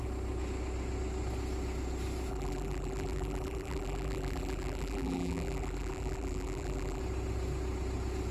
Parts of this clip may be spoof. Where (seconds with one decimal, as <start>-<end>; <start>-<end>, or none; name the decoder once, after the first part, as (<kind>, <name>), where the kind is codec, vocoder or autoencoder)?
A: 2.3-7.0 (vocoder, BigVGAN v2)